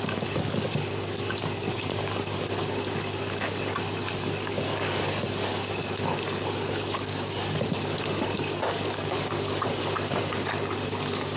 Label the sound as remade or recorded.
remade